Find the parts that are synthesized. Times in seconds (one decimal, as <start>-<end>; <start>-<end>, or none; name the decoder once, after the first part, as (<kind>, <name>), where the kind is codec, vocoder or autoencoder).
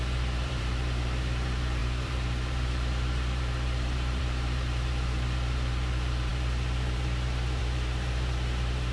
0.0-8.9 (vocoder, BigVGAN v2)